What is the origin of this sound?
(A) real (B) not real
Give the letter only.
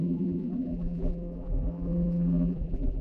B